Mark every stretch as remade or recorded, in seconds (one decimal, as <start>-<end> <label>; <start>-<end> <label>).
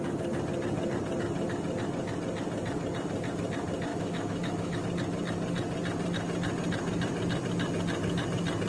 0.0-3.9 recorded; 3.9-4.8 remade; 4.8-8.7 recorded